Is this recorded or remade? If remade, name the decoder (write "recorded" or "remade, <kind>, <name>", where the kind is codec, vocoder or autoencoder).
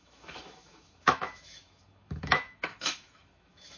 remade, autoencoder, DAC-VAE